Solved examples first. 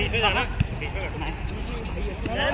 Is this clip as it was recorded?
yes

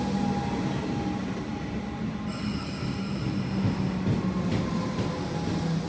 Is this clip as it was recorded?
yes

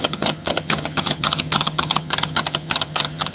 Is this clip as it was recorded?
no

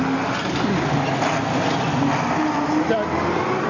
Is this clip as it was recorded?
yes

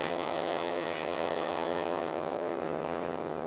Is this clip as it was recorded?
no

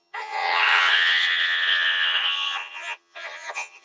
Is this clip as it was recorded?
no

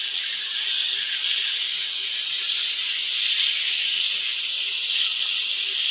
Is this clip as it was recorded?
yes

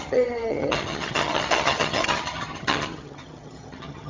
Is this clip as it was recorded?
no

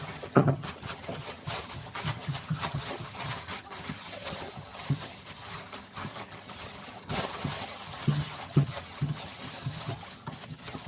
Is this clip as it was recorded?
no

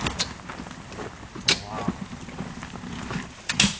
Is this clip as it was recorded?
yes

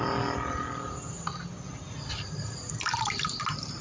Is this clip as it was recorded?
yes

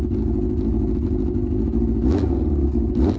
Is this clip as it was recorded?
yes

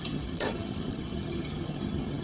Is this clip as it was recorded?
no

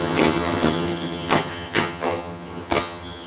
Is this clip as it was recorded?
no